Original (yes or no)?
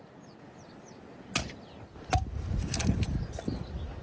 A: yes